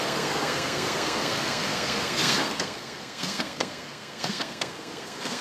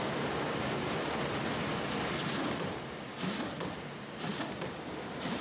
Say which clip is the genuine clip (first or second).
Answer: second